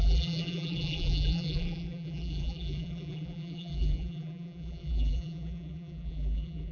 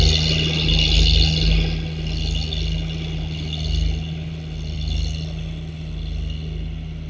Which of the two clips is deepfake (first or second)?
first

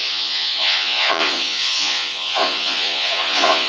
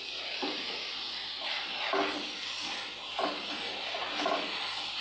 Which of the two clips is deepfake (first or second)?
first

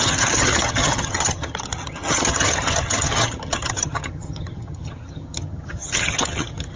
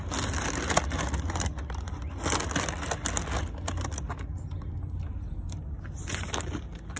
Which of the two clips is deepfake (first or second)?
first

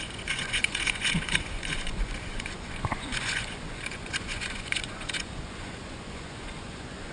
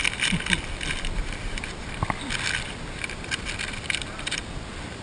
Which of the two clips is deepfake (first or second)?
first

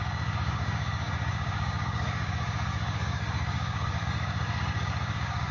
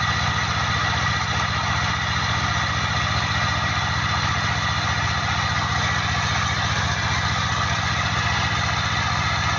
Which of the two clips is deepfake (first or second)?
first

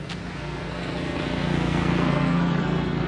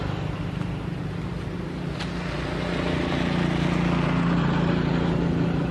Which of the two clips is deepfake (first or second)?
first